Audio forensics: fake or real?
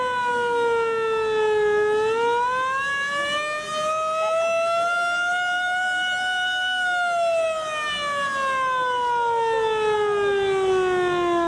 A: real